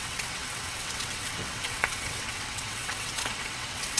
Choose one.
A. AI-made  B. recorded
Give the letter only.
A